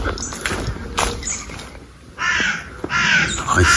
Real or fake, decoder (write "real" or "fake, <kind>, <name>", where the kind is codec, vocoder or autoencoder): real